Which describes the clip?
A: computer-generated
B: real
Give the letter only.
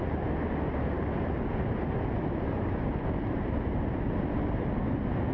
B